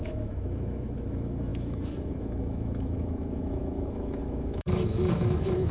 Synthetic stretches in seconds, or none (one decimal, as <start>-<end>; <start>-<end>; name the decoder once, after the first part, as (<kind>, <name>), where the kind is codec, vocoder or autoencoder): 0.0-5.7 (autoencoder, DAC-VAE)